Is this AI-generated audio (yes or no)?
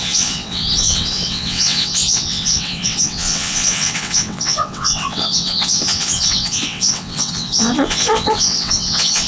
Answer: yes